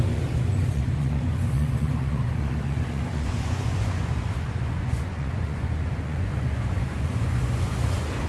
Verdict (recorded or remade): remade